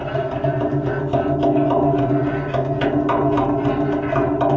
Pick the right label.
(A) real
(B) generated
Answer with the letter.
A